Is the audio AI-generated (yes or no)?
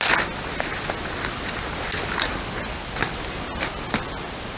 no